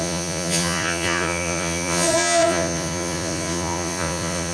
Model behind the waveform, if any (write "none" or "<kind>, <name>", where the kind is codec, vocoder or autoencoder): vocoder, Vocos